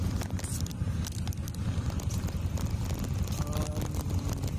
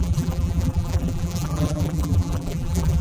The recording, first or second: first